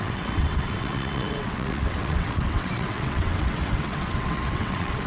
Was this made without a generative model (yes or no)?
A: no